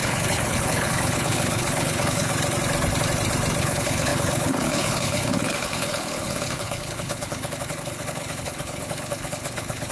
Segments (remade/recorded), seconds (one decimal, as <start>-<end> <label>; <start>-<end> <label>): 0.0-2.3 remade; 2.3-3.6 recorded; 3.6-9.9 remade